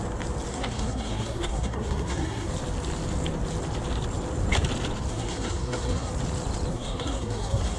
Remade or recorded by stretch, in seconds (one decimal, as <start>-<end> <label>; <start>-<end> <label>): 0.0-0.5 recorded; 0.5-2.5 remade; 2.5-5.1 recorded; 5.1-6.1 remade; 6.1-6.7 recorded; 6.7-7.8 remade